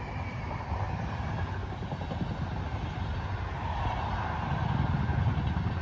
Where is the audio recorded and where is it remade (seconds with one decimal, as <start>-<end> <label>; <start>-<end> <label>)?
0.0-5.8 recorded